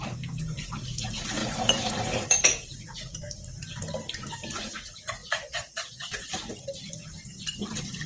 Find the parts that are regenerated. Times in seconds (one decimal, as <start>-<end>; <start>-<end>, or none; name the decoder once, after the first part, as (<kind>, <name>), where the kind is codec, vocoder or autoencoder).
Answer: 5.2-6.3 (vocoder, Vocos)